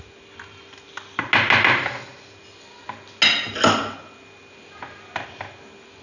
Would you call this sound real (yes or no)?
yes